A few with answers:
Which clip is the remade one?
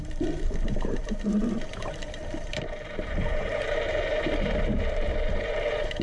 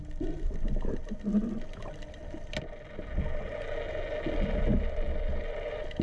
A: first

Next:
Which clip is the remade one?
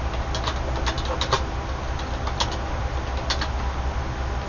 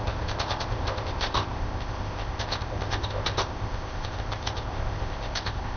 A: second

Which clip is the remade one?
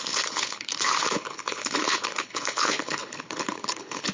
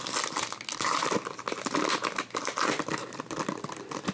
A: first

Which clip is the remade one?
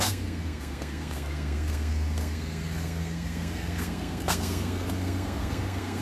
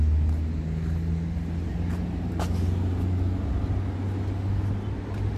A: first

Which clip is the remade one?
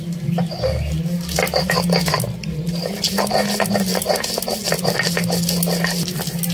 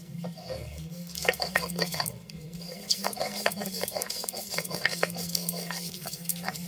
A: second